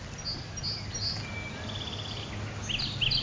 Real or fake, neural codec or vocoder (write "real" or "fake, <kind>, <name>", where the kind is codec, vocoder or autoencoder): real